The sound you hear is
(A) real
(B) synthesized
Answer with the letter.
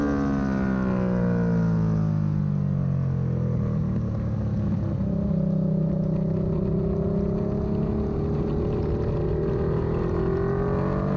A